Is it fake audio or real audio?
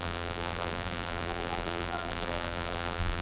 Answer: fake